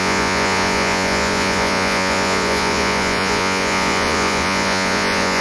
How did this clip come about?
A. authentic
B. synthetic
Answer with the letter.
B